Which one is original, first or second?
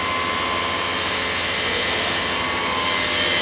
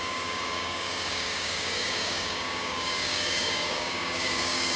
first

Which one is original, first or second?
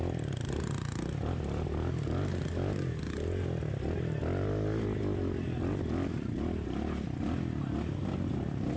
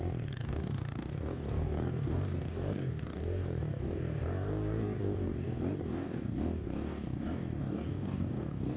first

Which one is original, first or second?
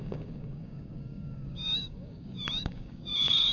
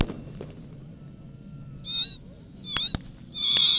second